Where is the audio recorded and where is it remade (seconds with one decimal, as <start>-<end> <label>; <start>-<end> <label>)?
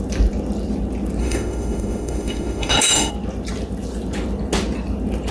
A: 0.0-1.2 recorded; 1.2-3.1 remade; 3.1-5.3 recorded